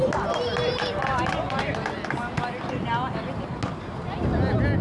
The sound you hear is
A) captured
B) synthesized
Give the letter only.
A